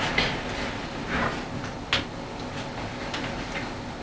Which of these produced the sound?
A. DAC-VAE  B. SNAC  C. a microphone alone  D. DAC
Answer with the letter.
C